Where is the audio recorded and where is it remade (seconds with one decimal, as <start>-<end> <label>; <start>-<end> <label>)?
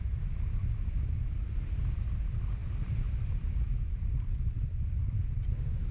0.0-5.9 recorded